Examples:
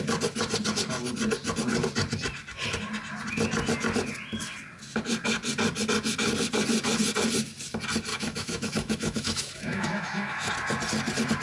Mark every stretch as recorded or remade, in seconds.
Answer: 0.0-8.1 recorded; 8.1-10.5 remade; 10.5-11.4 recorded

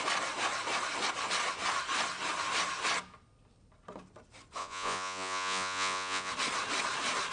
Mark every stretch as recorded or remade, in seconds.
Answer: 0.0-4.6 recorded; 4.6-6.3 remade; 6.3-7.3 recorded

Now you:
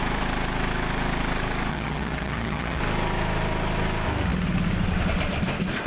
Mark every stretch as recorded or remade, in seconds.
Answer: 0.0-1.7 recorded; 1.7-2.8 remade; 2.8-5.9 recorded